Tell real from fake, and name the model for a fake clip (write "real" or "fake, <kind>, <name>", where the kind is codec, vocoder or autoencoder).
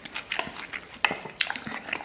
real